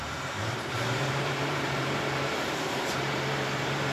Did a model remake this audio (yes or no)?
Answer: yes